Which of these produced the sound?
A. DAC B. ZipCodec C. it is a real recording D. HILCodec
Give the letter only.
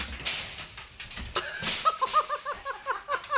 C